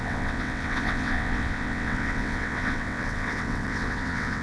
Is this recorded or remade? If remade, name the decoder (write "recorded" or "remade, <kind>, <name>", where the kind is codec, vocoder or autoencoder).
remade, vocoder, WaveNeXt